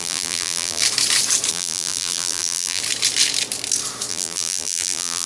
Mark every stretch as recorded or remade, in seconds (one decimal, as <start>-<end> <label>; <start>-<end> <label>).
0.0-0.8 remade; 0.8-1.5 recorded; 1.5-2.8 remade; 2.8-4.1 recorded; 4.1-5.3 remade